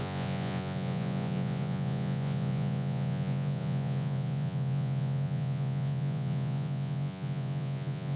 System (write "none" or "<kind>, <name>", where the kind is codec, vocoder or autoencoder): vocoder, Vocos